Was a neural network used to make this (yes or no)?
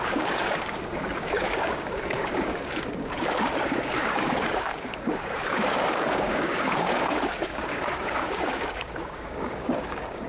yes